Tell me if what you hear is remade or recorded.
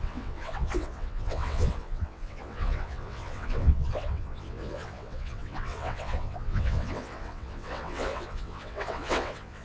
remade